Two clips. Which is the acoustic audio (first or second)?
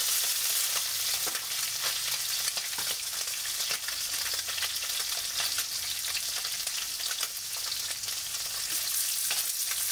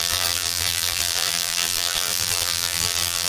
first